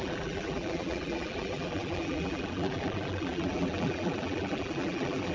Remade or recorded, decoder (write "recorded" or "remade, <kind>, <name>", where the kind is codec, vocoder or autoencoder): remade, vocoder, BigVGAN v2